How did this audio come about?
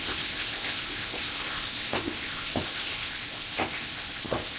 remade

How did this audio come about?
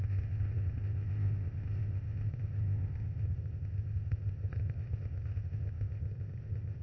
remade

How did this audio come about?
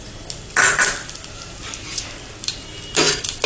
recorded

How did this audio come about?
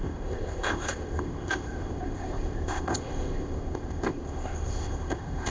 remade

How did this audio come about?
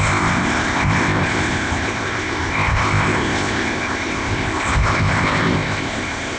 remade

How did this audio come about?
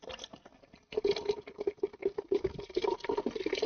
recorded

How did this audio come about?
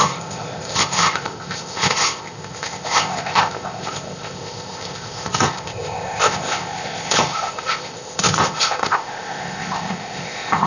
remade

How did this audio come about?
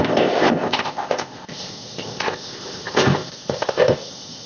remade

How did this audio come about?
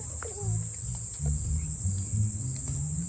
recorded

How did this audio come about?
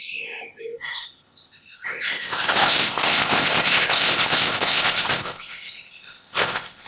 remade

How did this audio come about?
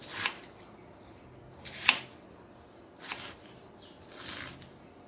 recorded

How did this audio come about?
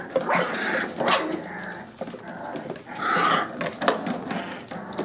recorded